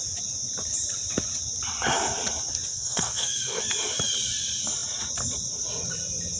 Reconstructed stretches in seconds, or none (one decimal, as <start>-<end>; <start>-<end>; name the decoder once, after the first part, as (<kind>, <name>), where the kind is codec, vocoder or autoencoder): 2.7-3.6 (codec, SNAC)